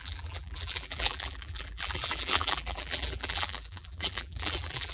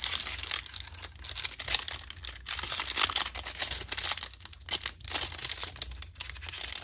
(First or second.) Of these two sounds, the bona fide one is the second